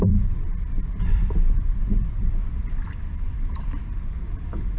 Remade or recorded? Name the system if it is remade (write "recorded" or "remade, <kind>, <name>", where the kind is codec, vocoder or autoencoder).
recorded